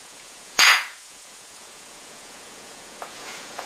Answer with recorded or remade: remade